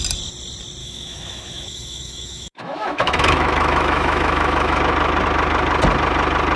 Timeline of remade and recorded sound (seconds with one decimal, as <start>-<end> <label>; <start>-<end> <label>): 0.0-0.8 recorded; 0.8-4.8 remade; 4.8-6.6 recorded